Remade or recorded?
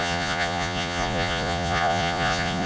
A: remade